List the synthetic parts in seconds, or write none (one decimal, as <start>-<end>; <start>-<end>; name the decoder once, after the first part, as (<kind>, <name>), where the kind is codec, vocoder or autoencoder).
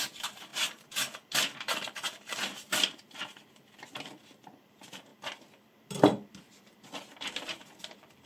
0.0-5.1 (vocoder, BigVGAN v2); 6.4-8.3